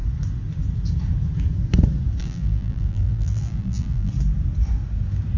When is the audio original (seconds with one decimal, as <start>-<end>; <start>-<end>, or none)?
0.0-2.2; 4.1-5.4